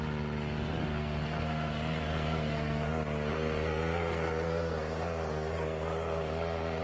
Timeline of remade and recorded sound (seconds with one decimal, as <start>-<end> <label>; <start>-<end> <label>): 0.0-0.9 recorded; 0.9-2.9 remade; 2.9-3.3 recorded; 3.3-6.8 remade